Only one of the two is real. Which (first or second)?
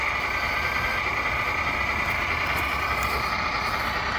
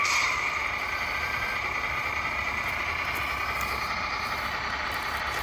first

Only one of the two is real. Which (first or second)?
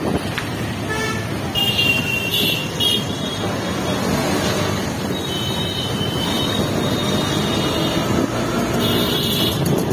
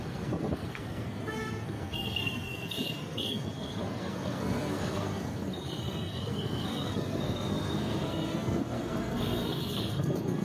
first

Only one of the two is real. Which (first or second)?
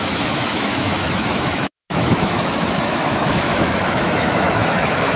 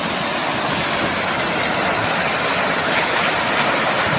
second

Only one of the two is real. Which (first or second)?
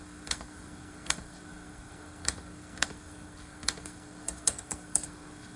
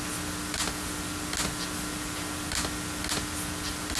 second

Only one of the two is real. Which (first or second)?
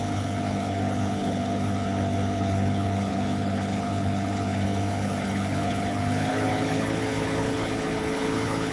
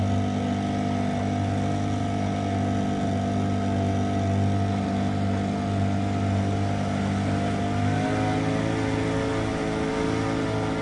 second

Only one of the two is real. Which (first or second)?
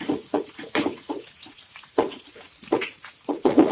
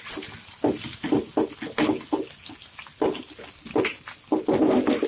second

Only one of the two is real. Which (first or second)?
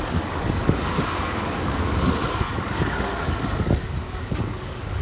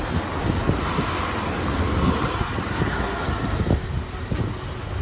second